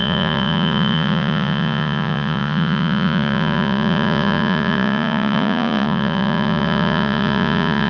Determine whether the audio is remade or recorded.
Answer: remade